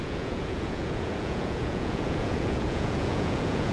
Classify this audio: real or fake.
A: fake